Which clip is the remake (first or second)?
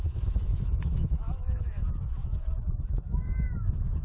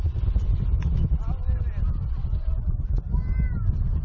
first